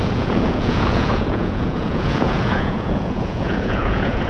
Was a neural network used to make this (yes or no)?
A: yes